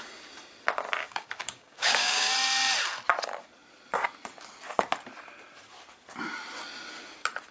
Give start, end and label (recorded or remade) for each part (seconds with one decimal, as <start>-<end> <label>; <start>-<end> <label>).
0.0-1.0 recorded; 1.0-2.3 remade; 2.3-7.5 recorded